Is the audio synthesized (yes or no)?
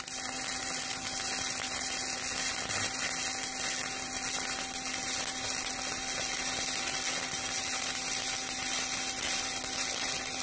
no